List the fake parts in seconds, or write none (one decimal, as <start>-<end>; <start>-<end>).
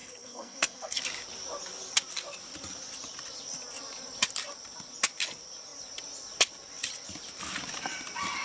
0.0-1.0